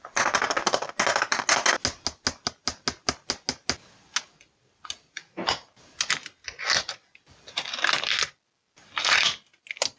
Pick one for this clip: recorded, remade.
recorded